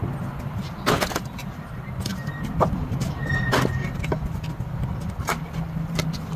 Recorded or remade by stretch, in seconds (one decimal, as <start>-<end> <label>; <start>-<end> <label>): 0.0-6.4 recorded